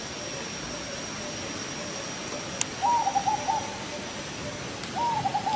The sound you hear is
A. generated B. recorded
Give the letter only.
B